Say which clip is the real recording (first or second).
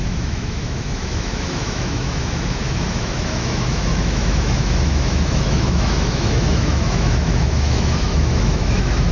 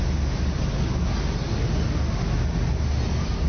second